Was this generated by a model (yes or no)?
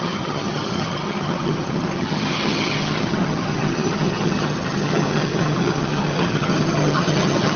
yes